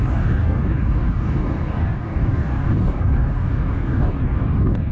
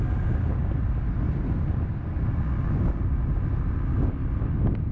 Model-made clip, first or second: first